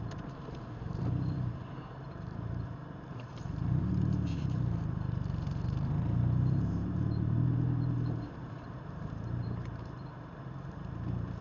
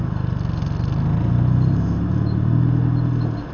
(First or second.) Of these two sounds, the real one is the second